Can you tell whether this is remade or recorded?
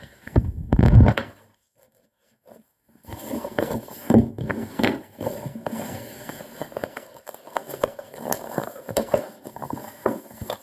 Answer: remade